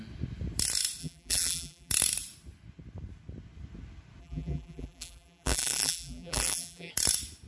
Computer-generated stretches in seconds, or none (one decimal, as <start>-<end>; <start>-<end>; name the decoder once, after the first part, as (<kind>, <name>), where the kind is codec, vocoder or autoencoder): 1.0-1.9 (vocoder, BigVGAN v2); 4.2-6.9